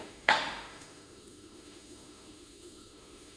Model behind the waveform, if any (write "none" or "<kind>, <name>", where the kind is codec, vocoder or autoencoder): autoencoder, DAC-VAE